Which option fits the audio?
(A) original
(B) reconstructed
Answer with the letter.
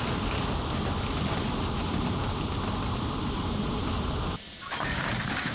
A